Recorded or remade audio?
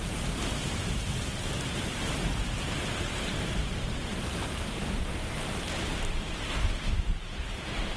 remade